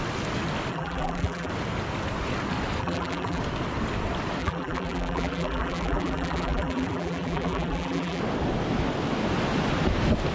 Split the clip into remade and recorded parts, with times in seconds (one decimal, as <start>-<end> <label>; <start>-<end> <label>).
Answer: 0.0-0.7 recorded; 0.7-1.5 remade; 1.5-2.8 recorded; 2.8-3.4 remade; 3.4-4.4 recorded; 4.4-8.2 remade; 8.2-10.3 recorded